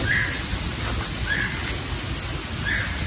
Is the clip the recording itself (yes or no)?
yes